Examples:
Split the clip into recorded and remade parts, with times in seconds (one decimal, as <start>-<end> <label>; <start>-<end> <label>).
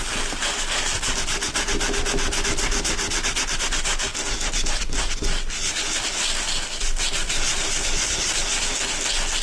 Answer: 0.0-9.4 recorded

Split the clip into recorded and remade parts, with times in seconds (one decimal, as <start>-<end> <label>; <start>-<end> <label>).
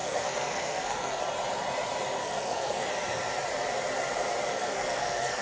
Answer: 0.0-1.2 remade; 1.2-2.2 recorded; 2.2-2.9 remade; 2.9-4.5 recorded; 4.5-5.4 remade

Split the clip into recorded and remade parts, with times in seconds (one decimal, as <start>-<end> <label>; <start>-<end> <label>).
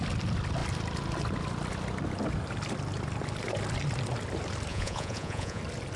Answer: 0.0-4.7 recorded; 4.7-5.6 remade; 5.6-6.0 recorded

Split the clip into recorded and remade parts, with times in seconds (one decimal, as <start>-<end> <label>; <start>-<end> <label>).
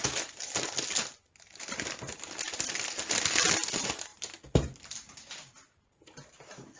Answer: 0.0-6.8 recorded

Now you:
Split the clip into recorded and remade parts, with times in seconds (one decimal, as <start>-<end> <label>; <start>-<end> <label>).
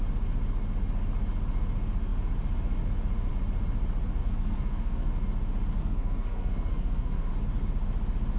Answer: 0.0-4.2 recorded; 4.2-5.1 remade; 5.1-5.8 recorded; 5.8-7.3 remade; 7.3-8.4 recorded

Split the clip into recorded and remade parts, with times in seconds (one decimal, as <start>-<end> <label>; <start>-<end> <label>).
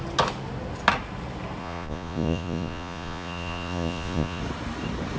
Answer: 0.0-1.6 recorded; 1.6-4.4 remade; 4.4-5.2 recorded